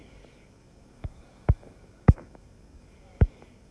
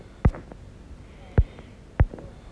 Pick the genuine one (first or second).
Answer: second